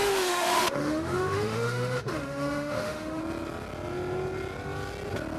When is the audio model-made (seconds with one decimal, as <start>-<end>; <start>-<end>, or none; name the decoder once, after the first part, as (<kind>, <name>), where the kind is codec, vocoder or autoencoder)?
0.0-3.2 (autoencoder, DAC-VAE)